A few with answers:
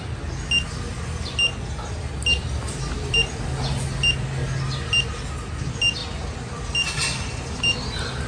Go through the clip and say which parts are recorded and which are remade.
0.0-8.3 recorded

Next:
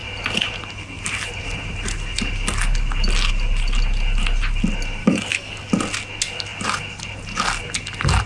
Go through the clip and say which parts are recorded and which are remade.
0.0-5.0 recorded; 5.0-5.7 remade; 5.7-8.3 recorded

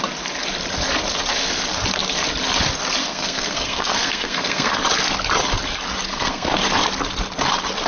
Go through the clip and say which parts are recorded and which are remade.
0.0-3.0 recorded; 3.0-4.8 remade; 4.8-6.1 recorded; 6.1-6.6 remade; 6.6-7.9 recorded